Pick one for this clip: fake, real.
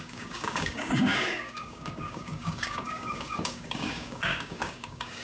fake